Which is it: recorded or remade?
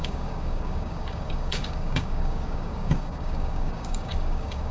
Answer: remade